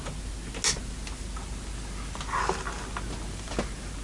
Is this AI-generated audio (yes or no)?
no